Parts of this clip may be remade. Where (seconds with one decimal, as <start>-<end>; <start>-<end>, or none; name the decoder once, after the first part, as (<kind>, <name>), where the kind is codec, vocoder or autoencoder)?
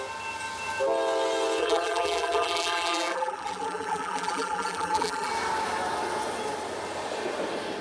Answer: 1.6-5.3 (vocoder, BigVGAN v2)